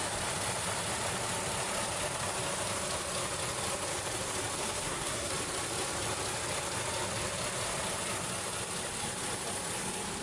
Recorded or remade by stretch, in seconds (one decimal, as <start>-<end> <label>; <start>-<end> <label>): 0.0-4.6 recorded; 4.6-5.3 remade; 5.3-10.2 recorded